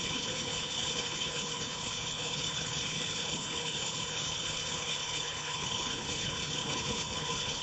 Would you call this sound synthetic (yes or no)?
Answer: yes